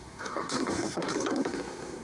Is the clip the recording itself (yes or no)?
no